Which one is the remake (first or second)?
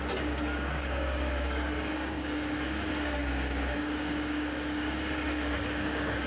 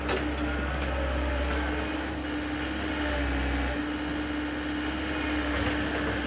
first